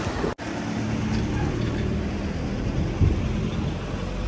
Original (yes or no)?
yes